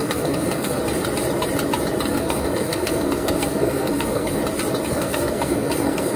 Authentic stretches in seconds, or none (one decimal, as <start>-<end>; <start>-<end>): 0.8-2.1; 4.4-4.9